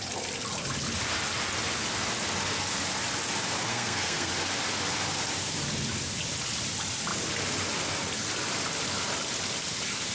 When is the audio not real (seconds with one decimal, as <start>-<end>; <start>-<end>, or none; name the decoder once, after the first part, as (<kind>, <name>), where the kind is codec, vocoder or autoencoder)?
3.7-4.3 (codec, SNAC)

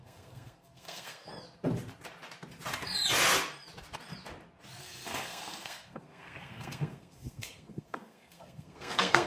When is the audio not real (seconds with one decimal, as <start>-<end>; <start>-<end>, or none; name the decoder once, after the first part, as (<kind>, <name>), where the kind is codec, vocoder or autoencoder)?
0.0-1.3 (codec, SNAC); 4.8-9.3

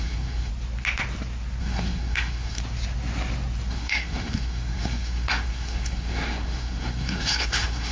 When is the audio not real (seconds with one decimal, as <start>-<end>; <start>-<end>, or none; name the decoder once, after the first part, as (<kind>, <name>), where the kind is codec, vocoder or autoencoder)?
0.0-0.5 (codec, SNAC); 1.6-2.6; 3.7-7.9

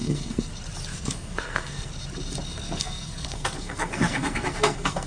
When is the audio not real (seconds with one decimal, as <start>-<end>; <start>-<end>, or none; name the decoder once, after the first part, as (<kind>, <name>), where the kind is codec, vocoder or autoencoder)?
0.0-0.5 (codec, SNAC); 0.9-1.9; 2.5-5.1